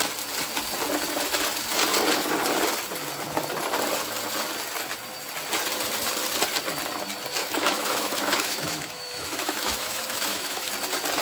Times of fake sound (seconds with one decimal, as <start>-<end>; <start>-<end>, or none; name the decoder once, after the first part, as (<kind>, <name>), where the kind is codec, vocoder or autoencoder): 7.4-10.7 (autoencoder, DAC-VAE)